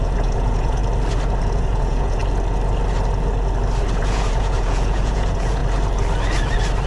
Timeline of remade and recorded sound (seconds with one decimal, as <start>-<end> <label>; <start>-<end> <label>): 0.0-0.8 remade; 0.8-1.4 recorded; 1.4-2.2 remade; 2.2-4.0 recorded; 4.0-5.6 remade; 5.6-6.9 recorded